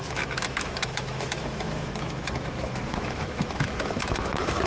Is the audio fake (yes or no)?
yes